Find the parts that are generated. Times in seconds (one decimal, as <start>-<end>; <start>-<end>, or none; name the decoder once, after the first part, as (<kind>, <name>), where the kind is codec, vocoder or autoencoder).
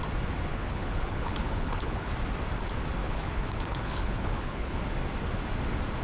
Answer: 0.5-2.1 (codec, HILCodec); 3.0-4.8